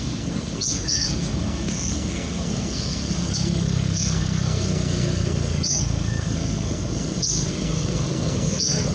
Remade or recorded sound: remade